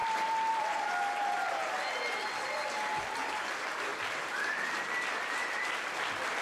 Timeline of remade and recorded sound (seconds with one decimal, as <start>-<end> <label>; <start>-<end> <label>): 0.0-0.5 remade; 0.5-6.4 recorded